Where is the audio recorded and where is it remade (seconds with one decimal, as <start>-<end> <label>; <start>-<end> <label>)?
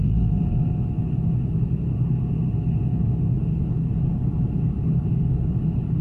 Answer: 0.0-6.0 recorded